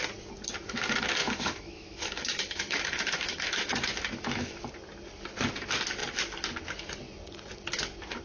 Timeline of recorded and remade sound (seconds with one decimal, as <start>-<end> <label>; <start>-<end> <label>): 0.0-1.2 recorded; 1.2-4.7 remade; 4.7-8.2 recorded